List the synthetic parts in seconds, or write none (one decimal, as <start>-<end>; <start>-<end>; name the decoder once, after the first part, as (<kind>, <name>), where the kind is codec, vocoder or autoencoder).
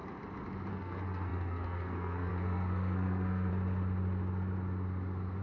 0.7-3.5 (codec, SNAC)